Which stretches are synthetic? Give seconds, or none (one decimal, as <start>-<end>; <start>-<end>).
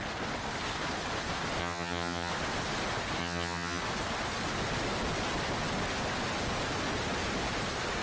1.6-2.3; 3.2-3.8